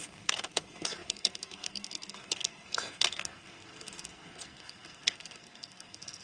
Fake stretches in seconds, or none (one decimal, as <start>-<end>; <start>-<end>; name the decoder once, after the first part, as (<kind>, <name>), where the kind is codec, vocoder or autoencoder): 0.0-6.2 (codec, SNAC)